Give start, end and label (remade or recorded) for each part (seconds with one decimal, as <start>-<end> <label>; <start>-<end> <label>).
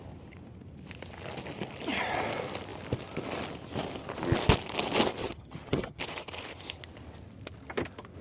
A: 0.0-5.2 recorded; 5.2-6.0 remade; 6.0-8.2 recorded